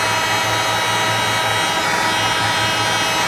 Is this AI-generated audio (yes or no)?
no